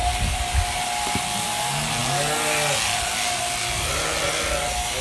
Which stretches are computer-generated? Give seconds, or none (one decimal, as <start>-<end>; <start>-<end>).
none